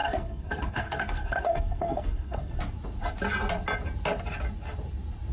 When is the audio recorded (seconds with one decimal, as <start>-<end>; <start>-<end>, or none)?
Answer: 2.6-5.3